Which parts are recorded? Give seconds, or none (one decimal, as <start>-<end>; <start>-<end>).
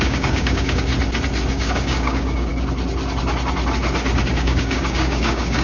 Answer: 0.9-1.5; 2.5-4.3